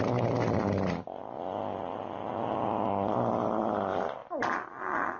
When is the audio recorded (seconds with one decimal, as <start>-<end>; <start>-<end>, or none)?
0.0-5.2

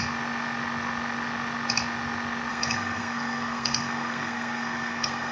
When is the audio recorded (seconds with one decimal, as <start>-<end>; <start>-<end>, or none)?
0.0-2.5

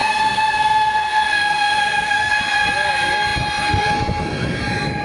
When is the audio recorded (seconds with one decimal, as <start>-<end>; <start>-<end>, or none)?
2.3-5.0

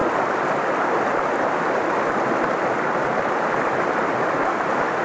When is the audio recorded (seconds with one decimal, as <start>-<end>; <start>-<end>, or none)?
0.0-5.0

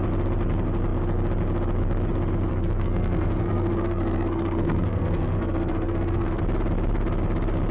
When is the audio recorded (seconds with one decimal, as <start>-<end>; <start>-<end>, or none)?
0.0-2.5; 6.4-7.7

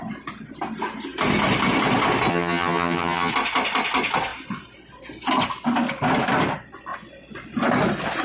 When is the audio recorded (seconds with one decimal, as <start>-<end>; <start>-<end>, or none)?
0.0-2.3; 3.3-8.2

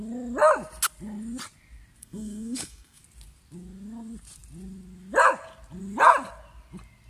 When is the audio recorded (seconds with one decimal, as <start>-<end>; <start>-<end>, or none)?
0.0-2.0; 3.0-7.1

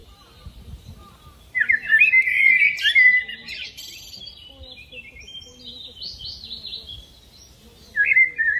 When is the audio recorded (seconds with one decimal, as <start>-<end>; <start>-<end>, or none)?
4.5-8.6